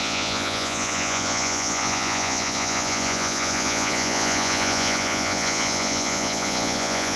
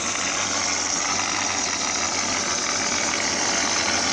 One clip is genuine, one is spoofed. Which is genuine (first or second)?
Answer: second